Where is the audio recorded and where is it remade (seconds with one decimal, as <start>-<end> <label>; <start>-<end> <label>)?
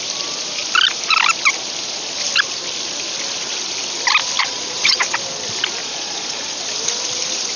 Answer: 0.0-4.4 recorded; 4.4-5.0 remade; 5.0-5.8 recorded; 5.8-6.6 remade; 6.6-7.6 recorded